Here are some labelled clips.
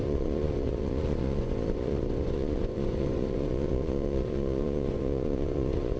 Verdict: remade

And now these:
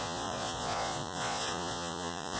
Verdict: remade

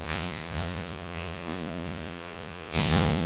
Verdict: remade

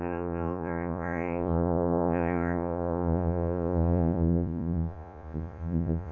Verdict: remade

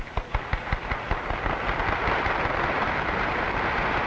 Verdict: recorded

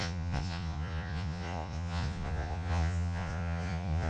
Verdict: remade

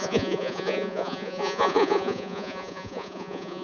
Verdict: remade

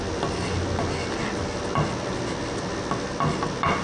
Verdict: recorded